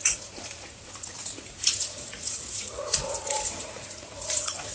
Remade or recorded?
remade